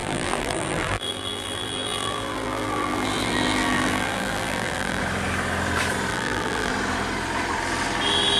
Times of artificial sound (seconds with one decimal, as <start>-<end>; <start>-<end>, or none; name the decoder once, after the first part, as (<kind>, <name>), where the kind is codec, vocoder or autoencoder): 0.0-5.0 (vocoder, BigVGAN v2); 6.1-6.7

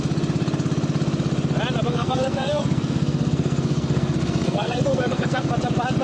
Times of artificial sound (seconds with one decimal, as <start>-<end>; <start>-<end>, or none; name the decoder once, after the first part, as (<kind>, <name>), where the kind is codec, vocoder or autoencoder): 1.9-5.5 (codec, SNAC)